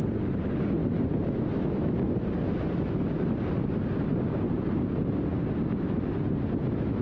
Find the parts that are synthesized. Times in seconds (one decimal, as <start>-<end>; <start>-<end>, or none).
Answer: 0.8-5.0